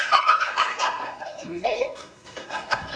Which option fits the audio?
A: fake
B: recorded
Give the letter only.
A